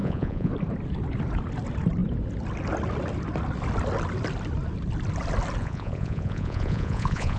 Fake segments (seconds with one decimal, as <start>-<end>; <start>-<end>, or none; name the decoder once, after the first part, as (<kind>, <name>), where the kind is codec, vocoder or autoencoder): 0.0-0.5 (vocoder, Vocos); 5.6-7.4